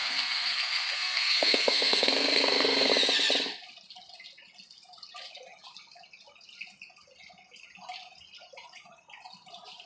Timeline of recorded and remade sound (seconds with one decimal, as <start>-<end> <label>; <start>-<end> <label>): 0.0-2.9 remade; 2.9-9.9 recorded